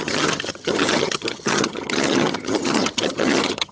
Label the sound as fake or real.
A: fake